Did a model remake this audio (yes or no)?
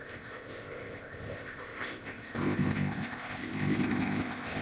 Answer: yes